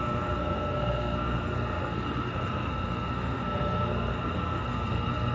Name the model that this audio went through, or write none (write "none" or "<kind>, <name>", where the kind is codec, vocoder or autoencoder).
codec, SNAC